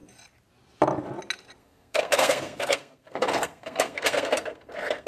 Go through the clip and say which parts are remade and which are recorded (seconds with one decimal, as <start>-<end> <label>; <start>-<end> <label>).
0.0-1.6 recorded; 1.6-5.1 remade